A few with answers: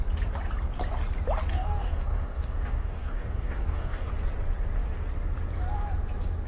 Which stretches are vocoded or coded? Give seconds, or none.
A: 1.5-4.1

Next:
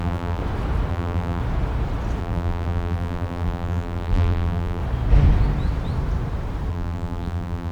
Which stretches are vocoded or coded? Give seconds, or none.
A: 0.0-0.4; 0.9-1.4; 2.2-4.8; 6.7-7.7

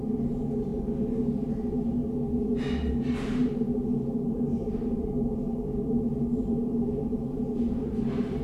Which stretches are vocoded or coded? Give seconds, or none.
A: 0.0-0.7; 1.5-2.0; 2.9-8.4